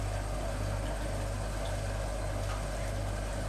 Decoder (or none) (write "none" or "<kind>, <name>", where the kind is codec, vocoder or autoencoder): none